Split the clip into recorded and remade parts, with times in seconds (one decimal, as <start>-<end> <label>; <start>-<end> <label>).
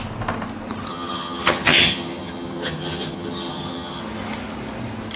0.0-0.9 recorded; 0.9-4.0 remade; 4.0-5.2 recorded